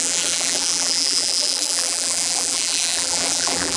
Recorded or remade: remade